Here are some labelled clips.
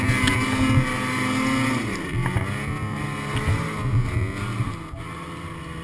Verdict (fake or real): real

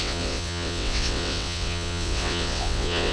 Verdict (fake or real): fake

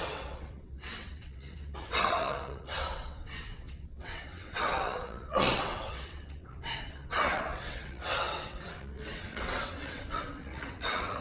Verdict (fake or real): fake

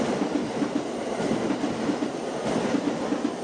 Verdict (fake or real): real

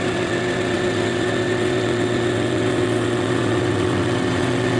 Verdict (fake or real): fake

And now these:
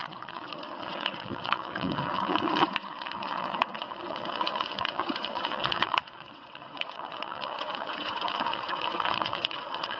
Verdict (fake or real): fake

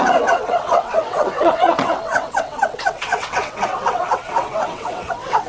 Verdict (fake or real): fake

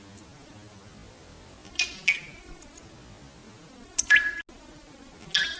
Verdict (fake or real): real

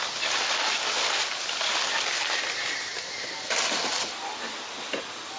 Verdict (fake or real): real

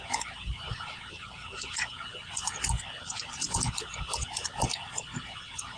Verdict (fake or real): real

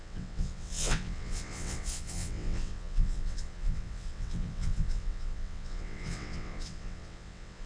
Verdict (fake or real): fake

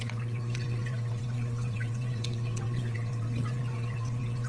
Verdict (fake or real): fake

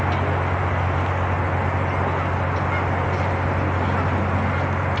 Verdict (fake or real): real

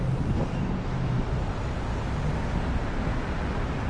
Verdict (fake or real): real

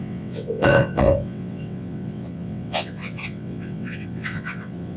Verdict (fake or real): fake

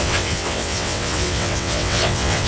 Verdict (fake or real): fake